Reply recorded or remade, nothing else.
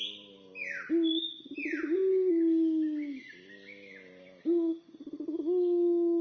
recorded